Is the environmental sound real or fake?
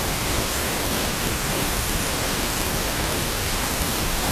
fake